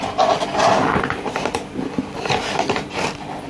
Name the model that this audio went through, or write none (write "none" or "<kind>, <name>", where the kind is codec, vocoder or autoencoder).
none